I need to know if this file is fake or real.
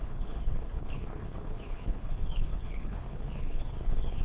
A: fake